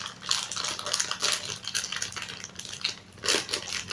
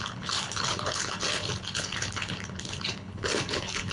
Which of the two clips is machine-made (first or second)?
second